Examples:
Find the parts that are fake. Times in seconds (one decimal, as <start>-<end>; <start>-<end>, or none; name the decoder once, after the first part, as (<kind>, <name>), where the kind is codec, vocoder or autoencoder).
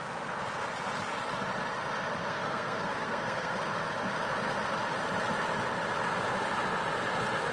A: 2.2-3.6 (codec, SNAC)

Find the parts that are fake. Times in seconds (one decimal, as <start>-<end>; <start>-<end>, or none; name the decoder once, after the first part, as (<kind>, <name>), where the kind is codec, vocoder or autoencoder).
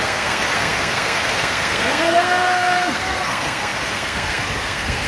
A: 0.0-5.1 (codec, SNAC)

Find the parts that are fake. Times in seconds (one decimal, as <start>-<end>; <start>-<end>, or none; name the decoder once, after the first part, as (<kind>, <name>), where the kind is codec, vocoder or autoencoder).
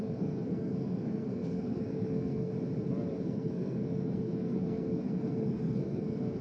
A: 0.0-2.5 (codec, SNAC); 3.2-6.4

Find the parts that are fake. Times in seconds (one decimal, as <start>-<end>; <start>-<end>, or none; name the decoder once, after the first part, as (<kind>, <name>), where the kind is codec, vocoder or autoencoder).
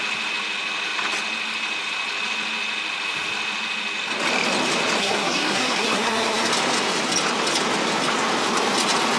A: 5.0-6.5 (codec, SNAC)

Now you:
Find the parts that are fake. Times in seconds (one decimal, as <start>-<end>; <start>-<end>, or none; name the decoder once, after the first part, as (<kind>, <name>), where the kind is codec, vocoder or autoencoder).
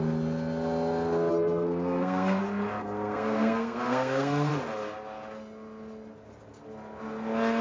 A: 1.3-2.4 (codec, SNAC); 2.8-4.5